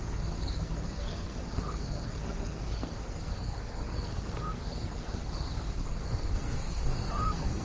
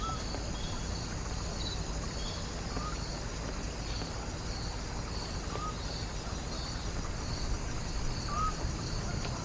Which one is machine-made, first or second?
first